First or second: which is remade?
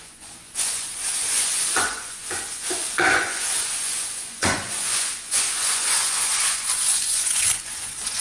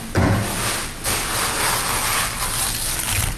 first